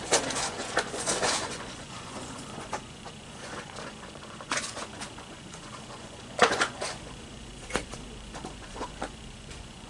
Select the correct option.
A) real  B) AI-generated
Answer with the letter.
B